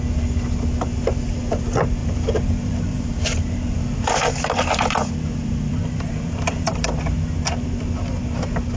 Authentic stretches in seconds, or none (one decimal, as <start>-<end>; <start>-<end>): 0.0-2.0; 7.1-8.8